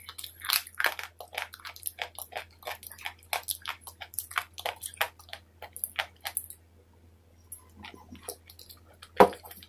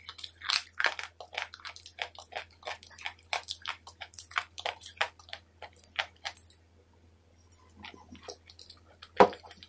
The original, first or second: first